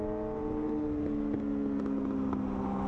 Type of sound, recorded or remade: recorded